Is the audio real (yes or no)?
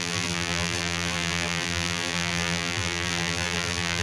no